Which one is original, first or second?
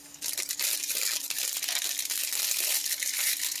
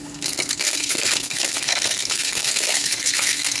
first